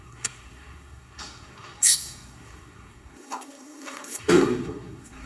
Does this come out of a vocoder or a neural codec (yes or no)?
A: yes